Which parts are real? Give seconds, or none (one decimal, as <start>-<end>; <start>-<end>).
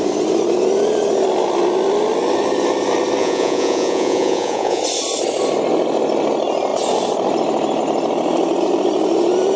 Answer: 0.0-3.2; 4.8-9.6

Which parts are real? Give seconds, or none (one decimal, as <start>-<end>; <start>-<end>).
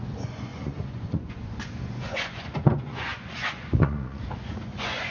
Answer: none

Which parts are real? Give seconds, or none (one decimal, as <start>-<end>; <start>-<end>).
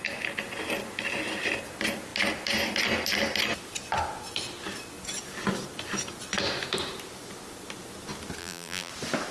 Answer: 0.0-8.4; 8.9-9.3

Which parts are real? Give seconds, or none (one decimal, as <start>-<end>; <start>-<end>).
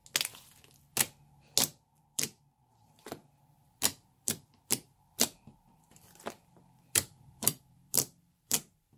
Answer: 0.0-2.0